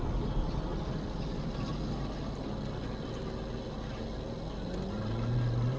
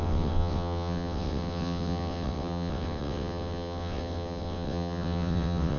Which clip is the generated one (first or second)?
second